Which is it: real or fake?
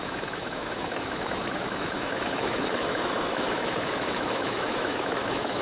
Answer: fake